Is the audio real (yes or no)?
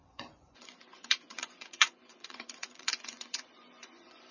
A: no